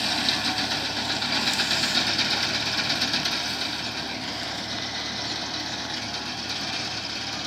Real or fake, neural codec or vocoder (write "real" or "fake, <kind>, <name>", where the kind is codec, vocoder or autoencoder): real